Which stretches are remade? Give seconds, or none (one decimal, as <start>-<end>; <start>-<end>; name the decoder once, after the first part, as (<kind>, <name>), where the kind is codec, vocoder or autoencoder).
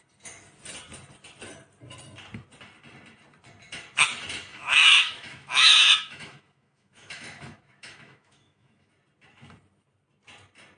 4.5-8.9 (autoencoder, DAC-VAE)